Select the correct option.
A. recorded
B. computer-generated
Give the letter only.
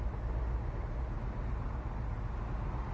A